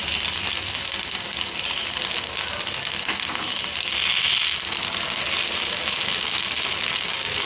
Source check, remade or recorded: recorded